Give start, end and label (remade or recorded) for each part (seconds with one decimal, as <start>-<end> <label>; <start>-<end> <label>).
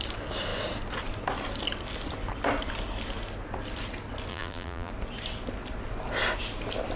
0.0-4.3 recorded; 4.3-4.9 remade; 4.9-7.0 recorded